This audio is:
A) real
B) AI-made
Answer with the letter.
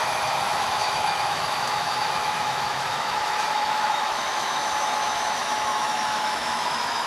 B